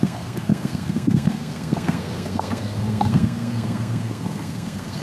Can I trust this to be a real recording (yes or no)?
no